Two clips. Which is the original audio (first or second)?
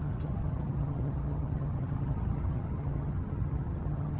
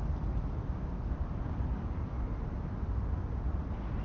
second